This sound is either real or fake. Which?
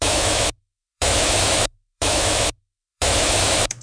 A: fake